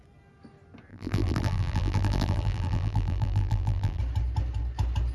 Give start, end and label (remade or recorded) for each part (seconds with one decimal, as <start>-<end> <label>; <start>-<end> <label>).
0.0-0.9 recorded; 0.9-4.0 remade; 4.0-5.1 recorded